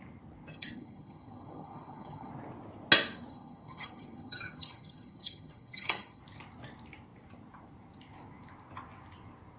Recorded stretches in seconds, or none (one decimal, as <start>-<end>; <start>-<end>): 0.0-0.5; 2.3-3.3; 6.2-9.6

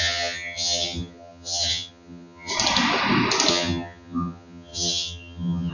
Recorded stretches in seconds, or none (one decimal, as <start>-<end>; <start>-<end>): 2.5-3.5

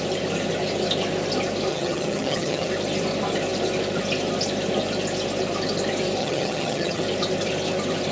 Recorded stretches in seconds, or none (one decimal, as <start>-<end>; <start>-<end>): 0.0-1.7; 2.7-6.2; 7.0-8.1

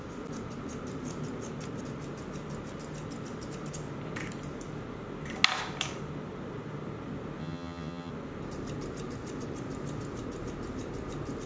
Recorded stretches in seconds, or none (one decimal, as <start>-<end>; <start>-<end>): 0.0-7.4; 8.1-11.5

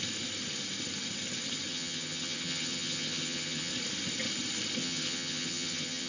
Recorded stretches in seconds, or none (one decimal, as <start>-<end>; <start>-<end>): 0.0-1.7; 3.7-4.8